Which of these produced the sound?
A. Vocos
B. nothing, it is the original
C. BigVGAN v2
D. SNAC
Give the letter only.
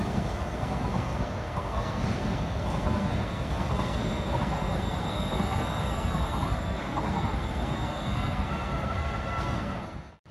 D